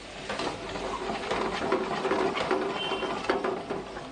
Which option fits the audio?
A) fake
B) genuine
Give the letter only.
B